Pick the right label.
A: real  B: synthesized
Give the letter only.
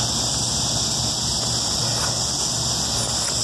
A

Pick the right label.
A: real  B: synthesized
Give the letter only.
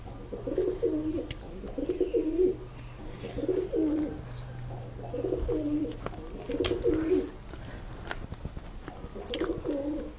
A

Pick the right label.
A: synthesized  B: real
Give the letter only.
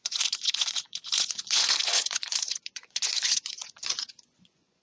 A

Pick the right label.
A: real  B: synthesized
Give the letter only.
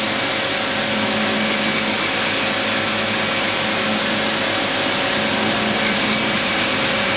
A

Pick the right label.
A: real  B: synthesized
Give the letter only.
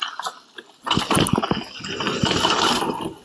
A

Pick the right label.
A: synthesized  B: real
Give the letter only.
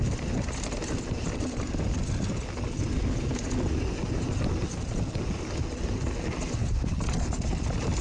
B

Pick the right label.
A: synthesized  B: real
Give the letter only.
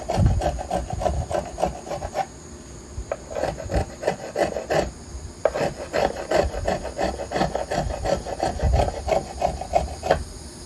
B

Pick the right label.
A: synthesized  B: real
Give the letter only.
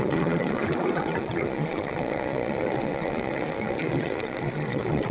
A